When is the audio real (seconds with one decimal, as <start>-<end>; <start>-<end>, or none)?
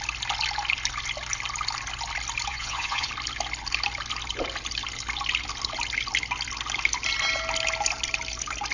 0.0-2.5; 3.1-8.7